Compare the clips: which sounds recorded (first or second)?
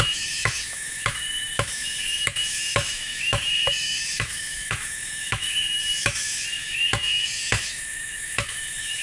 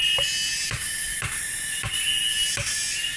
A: second